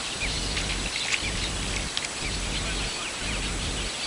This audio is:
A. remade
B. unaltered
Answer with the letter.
B